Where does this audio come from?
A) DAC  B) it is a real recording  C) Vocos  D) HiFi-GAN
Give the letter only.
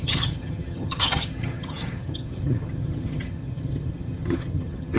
D